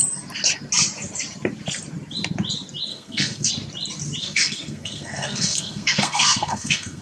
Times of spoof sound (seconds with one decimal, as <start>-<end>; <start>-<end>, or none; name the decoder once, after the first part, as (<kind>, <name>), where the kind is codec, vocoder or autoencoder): 2.9-3.5 (codec, SNAC); 4.2-7.0